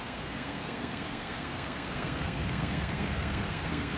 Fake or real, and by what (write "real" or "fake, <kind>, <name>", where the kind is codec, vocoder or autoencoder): fake, codec, SNAC